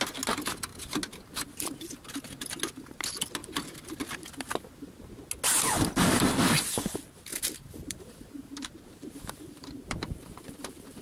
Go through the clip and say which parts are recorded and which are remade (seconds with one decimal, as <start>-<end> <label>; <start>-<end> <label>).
0.0-7.3 recorded; 7.3-11.0 remade